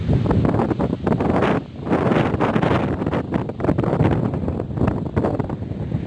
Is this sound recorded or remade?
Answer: recorded